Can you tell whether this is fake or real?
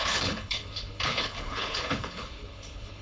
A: fake